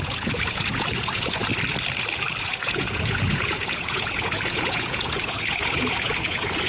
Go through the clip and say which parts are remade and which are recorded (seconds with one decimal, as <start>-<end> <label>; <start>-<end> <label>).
0.0-1.4 remade; 1.4-2.4 recorded; 2.4-6.7 remade